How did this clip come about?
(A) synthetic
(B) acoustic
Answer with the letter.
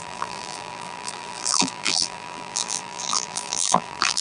A